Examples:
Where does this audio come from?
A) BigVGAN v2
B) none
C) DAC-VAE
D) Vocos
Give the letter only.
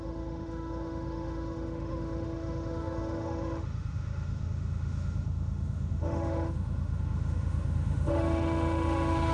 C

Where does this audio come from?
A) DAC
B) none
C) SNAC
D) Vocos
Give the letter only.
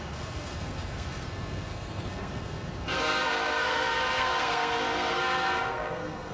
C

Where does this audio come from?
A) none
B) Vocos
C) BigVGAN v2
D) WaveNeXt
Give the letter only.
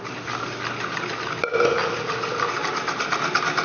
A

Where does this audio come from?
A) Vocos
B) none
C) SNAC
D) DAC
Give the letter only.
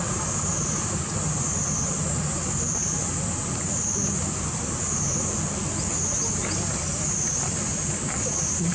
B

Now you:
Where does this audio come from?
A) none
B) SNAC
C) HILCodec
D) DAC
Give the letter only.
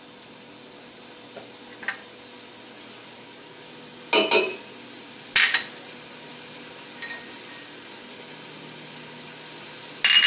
A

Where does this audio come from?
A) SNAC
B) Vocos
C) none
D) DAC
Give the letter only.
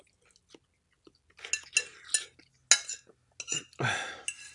C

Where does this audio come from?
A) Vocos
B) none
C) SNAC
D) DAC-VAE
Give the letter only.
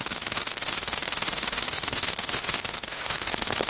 D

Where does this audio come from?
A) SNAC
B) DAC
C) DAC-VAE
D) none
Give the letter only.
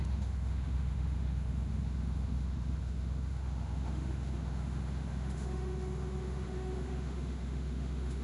C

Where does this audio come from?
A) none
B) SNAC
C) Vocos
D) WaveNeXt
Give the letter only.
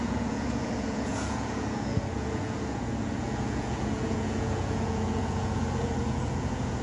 C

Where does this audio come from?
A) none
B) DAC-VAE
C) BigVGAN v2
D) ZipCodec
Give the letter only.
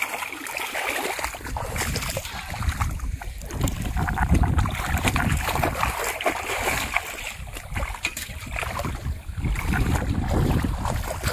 C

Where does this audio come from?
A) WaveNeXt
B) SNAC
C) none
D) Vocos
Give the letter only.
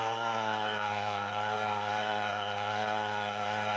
B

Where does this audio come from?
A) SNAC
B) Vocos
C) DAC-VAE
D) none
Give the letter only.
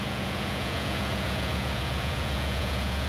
B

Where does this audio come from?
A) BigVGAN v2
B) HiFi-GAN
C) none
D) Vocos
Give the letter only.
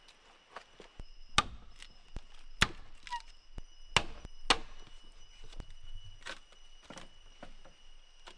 C